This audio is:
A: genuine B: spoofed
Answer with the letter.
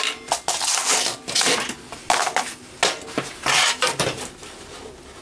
A